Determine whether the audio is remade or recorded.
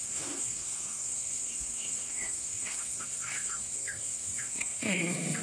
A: remade